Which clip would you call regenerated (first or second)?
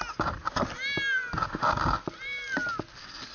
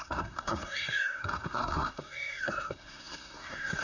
second